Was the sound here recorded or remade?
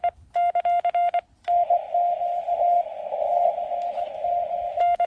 recorded